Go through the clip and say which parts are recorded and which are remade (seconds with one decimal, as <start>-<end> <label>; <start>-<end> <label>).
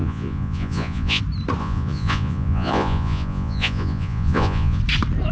0.0-1.2 remade; 1.2-1.6 recorded; 1.6-4.8 remade; 4.8-5.3 recorded